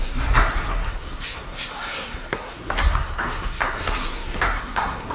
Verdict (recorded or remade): remade